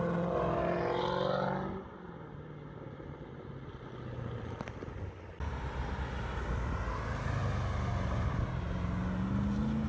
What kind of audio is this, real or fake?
real